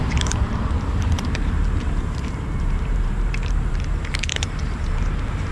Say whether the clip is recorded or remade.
remade